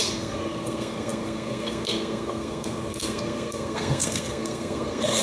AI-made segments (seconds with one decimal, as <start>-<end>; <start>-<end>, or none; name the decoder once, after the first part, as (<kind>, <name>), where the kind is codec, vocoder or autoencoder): 0.0-5.2 (codec, SNAC)

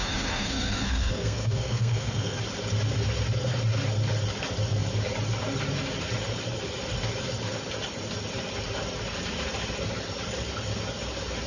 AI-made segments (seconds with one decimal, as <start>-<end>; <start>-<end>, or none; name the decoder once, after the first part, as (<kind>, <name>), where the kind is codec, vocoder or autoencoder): 0.0-2.4 (codec, SNAC)